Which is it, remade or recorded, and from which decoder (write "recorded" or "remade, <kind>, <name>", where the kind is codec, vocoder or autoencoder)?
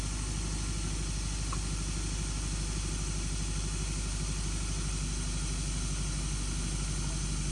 recorded